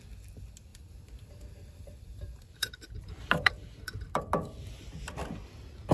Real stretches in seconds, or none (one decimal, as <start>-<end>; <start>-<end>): 0.0-0.7; 4.2-5.9